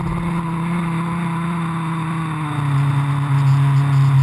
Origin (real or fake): real